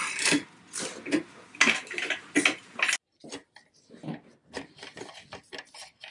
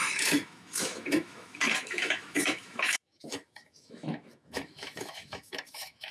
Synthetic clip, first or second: second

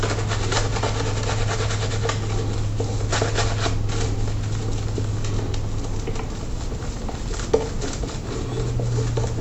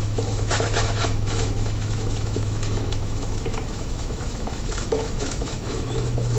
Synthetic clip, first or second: second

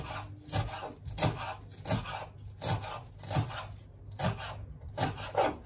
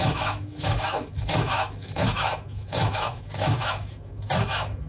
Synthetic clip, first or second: second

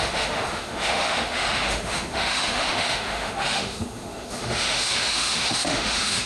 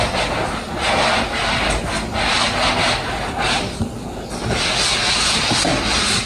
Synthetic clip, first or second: first